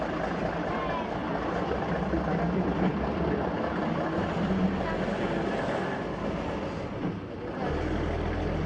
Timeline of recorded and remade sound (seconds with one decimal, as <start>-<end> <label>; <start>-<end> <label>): 0.0-1.2 recorded; 1.2-5.6 remade; 5.6-8.7 recorded